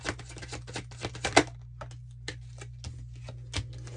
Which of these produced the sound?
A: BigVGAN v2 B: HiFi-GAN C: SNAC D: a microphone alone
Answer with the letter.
D